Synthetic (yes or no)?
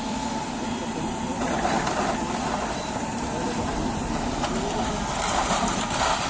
yes